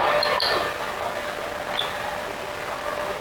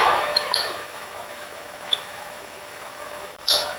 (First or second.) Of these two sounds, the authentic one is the first